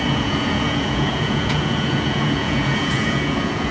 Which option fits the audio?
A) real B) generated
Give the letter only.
B